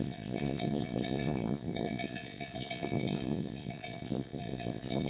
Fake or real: fake